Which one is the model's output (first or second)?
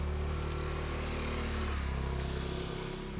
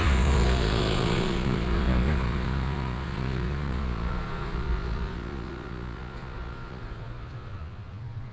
second